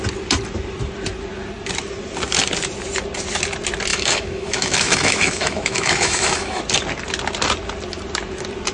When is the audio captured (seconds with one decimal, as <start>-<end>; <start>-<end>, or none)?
0.0-3.9; 6.6-8.7